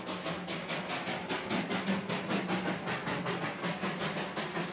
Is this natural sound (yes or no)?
yes